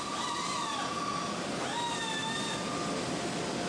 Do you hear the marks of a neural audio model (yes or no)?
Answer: no